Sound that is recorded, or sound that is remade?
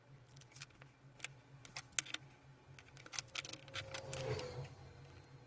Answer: recorded